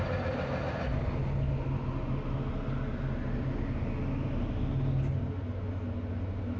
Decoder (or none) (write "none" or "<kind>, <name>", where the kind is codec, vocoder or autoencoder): none